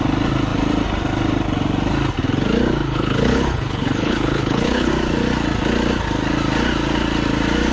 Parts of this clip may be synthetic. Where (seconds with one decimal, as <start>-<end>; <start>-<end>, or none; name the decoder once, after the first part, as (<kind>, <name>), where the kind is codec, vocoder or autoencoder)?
2.8-4.9 (codec, HILCodec)